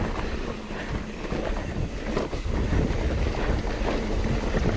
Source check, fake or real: real